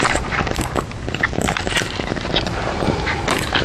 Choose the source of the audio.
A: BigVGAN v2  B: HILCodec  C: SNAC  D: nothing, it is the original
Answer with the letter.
A